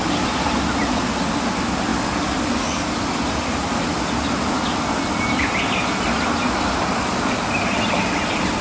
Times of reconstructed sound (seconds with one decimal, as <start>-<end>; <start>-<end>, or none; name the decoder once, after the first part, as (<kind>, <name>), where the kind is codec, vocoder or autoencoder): none